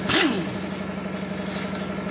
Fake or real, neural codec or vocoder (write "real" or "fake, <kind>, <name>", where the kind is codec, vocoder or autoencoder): real